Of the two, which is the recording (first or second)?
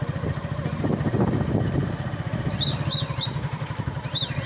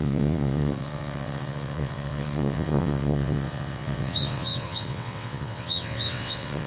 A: first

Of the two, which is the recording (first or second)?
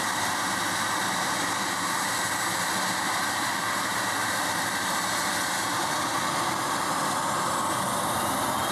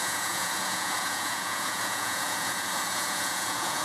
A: first